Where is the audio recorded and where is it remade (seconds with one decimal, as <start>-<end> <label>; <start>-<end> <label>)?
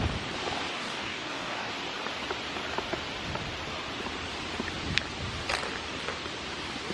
0.0-0.7 recorded; 0.7-1.7 remade; 1.7-6.9 recorded